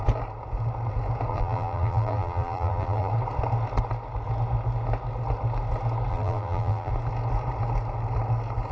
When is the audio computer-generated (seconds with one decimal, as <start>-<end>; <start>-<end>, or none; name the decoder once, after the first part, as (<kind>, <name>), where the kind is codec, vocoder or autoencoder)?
1.3-3.1 (vocoder, BigVGAN v2); 6.1-6.9